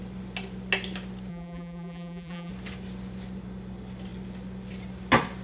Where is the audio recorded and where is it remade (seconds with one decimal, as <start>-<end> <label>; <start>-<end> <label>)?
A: 0.0-1.3 recorded; 1.3-2.5 remade; 2.5-5.4 recorded